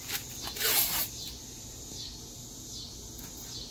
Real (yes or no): yes